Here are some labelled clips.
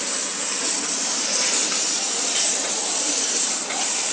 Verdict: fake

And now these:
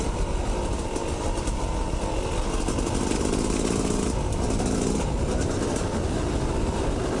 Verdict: real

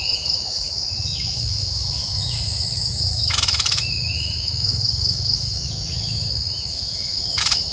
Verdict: fake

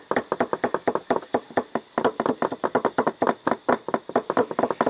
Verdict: real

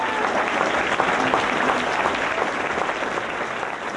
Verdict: real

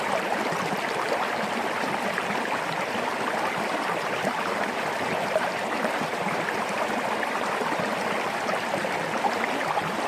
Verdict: fake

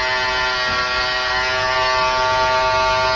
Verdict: real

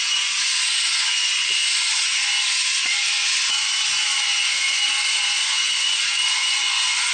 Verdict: fake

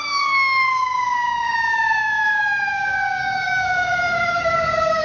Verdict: fake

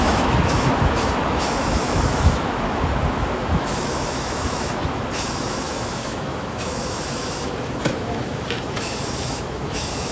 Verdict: fake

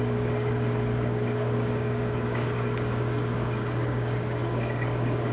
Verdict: fake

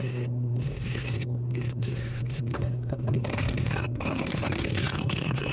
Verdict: fake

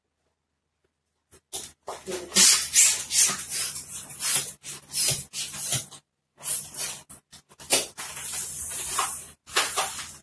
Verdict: real